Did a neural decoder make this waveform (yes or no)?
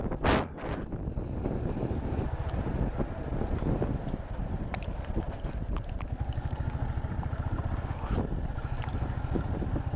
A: no